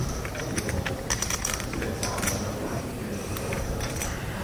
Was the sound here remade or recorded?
remade